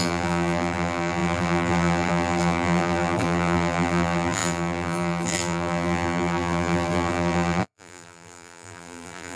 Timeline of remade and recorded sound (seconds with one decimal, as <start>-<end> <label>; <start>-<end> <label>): 0.0-9.4 remade